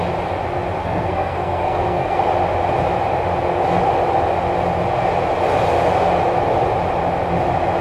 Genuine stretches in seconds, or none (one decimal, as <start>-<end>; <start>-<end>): 0.0-0.8; 2.2-7.8